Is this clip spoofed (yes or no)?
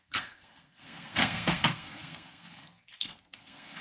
yes